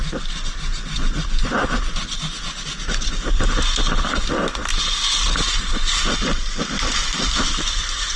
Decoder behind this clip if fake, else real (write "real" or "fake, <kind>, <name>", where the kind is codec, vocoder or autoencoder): real